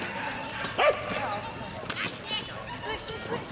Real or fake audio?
real